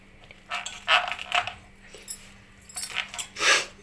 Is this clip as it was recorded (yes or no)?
yes